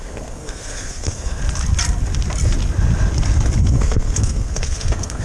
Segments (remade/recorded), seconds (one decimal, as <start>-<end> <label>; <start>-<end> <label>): 0.0-1.4 remade; 1.4-3.6 recorded; 3.6-5.2 remade